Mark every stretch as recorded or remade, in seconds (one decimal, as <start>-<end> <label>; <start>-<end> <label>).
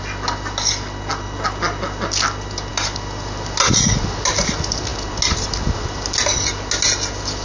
0.0-7.4 recorded